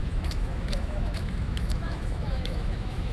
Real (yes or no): no